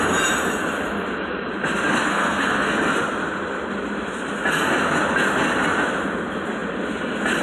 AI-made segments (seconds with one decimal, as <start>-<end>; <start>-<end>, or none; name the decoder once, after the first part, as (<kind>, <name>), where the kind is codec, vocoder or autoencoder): 2.1-2.7 (codec, SNAC)